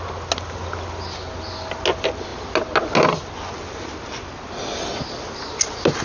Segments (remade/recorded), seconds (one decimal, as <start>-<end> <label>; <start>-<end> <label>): 0.0-6.0 recorded